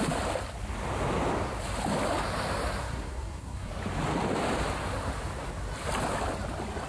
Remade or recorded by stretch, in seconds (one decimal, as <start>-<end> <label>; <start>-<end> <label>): 0.0-2.8 recorded; 2.8-3.7 remade; 3.7-6.9 recorded